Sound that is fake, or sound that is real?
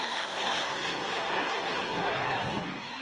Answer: fake